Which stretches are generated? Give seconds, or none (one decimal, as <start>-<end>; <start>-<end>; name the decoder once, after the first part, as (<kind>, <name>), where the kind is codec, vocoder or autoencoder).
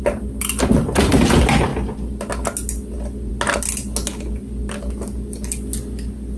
none